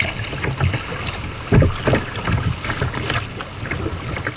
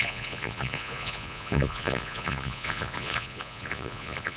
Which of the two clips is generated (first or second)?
second